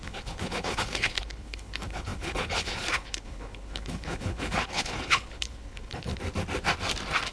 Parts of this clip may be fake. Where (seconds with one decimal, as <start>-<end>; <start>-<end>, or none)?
0.0-6.1